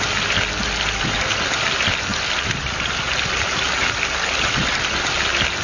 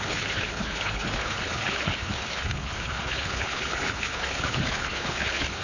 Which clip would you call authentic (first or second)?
first